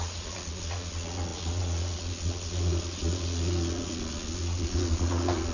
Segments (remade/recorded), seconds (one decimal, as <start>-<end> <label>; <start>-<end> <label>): 0.0-5.5 remade